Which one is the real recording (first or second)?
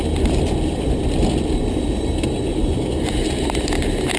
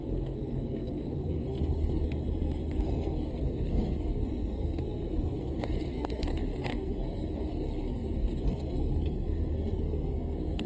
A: first